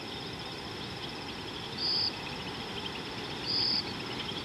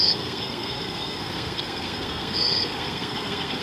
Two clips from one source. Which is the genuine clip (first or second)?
first